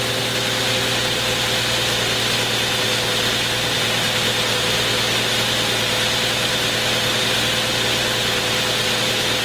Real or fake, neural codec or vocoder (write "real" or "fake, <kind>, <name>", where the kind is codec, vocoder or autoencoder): real